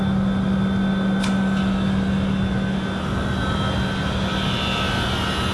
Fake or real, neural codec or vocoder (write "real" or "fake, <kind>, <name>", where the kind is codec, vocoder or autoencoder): real